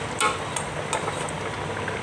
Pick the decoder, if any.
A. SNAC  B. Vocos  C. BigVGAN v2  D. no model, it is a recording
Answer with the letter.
D